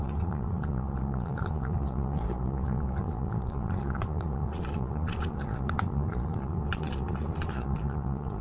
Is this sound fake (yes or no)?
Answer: yes